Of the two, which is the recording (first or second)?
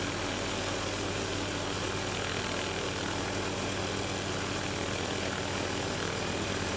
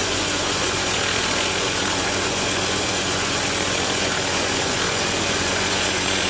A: first